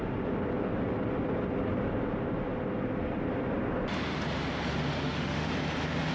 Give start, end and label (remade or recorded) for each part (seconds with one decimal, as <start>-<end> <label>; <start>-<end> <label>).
0.0-5.0 recorded; 5.0-5.5 remade; 5.5-6.1 recorded